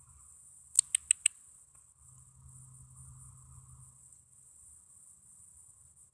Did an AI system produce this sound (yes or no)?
no